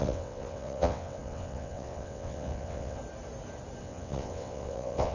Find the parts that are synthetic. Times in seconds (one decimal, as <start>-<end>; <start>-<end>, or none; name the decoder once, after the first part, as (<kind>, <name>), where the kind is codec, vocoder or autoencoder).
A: 0.0-3.0 (vocoder, WaveNeXt); 3.8-5.1